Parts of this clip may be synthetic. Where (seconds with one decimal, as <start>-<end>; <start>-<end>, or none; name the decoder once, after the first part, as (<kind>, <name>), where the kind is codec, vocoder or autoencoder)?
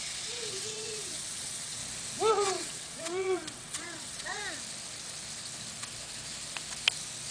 0.0-1.8 (vocoder, WaveNeXt); 2.3-4.4